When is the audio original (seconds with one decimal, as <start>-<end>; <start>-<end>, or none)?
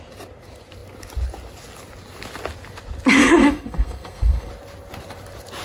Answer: 0.0-3.2; 4.5-5.6